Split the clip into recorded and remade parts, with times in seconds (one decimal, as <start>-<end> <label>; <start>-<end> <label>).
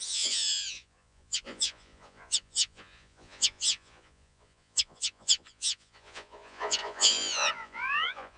0.0-8.4 remade